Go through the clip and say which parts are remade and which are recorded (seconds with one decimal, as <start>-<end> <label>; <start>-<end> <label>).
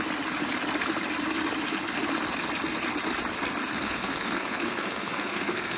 0.0-3.7 recorded; 3.7-5.8 remade